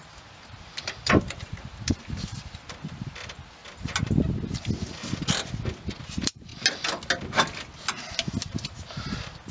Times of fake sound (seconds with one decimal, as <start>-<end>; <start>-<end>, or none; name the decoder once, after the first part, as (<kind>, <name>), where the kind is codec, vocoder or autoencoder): 0.0-3.6 (vocoder, BigVGAN v2); 6.0-6.5; 8.9-9.5